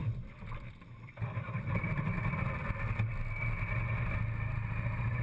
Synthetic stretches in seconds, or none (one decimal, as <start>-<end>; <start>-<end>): 0.0-3.1